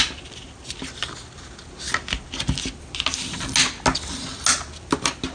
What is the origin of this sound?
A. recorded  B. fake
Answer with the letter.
A